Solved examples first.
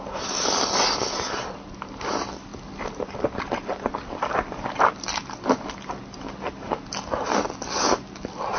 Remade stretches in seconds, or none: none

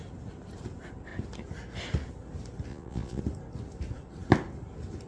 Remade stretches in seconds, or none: 2.7-3.2 (vocoder, Vocos)

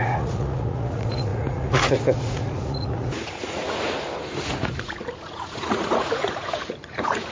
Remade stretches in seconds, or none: 0.0-7.3 (vocoder, Vocos)

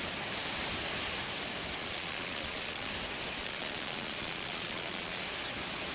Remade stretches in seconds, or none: 1.8-2.9 (vocoder, Vocos); 3.4-5.2

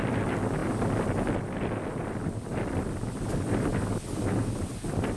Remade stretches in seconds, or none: none

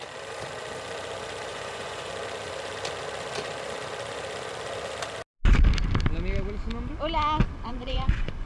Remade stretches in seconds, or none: 1.5-2.1 (vocoder, Vocos); 7.7-8.5